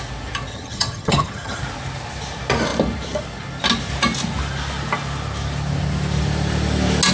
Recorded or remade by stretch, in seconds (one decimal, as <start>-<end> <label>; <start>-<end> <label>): 0.0-0.5 recorded; 0.5-1.6 remade; 1.6-7.1 recorded